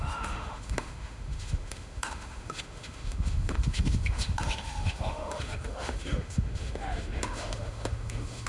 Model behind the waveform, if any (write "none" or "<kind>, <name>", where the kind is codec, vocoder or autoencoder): autoencoder, DAC-VAE